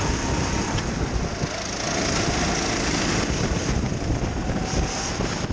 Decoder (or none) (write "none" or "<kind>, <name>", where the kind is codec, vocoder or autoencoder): none